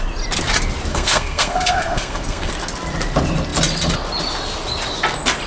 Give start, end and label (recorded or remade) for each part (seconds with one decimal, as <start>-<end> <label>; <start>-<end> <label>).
0.0-0.9 recorded; 0.9-2.5 remade; 2.5-5.5 recorded